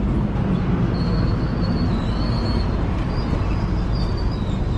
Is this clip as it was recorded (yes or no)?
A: yes